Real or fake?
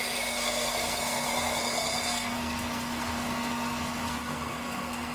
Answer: fake